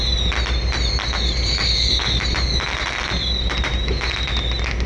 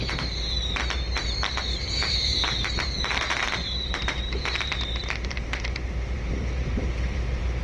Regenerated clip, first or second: second